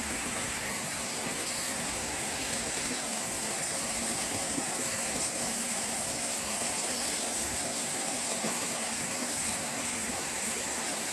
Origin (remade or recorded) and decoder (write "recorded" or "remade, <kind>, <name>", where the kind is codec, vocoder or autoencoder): remade, codec, SNAC